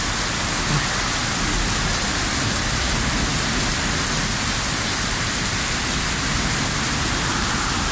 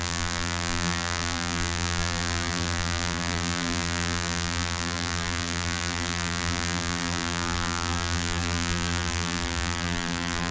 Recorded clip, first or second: first